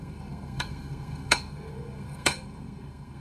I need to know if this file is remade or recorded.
remade